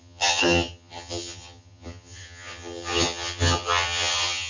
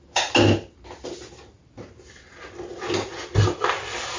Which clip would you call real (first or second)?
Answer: second